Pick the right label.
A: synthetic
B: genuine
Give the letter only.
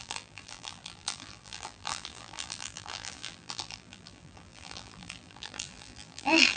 A